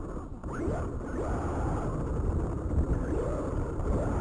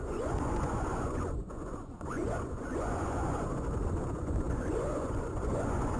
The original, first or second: first